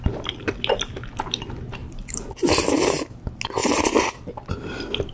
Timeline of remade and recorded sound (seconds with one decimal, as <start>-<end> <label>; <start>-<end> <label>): 0.0-1.8 recorded; 1.8-2.8 remade; 2.8-3.6 recorded; 3.6-4.5 remade; 4.5-5.1 recorded